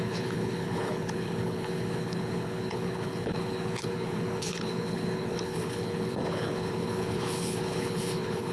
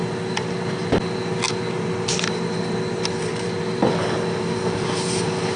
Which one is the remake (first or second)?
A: first